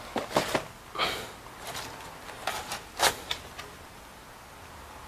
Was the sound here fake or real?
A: real